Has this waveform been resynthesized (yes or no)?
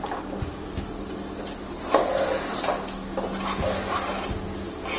no